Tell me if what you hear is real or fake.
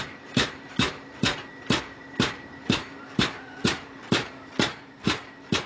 fake